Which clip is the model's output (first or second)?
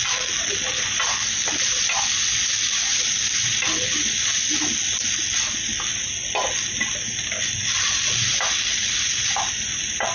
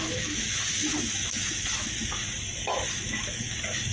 second